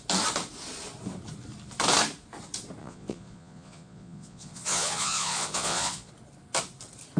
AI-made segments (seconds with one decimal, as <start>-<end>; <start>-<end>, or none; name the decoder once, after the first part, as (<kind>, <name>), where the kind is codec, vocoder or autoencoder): 2.8-6.1 (vocoder, Vocos)